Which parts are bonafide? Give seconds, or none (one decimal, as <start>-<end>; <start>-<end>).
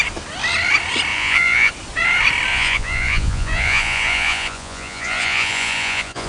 0.0-1.1; 1.7-2.5